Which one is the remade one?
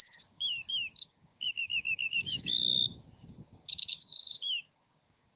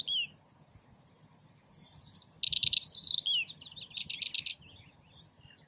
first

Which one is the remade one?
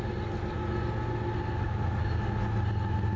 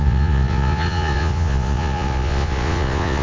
second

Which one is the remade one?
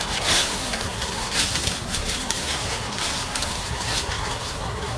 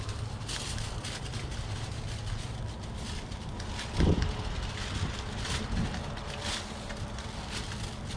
first